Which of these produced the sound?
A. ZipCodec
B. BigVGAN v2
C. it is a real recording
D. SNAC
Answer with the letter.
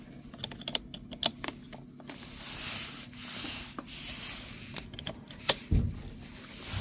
C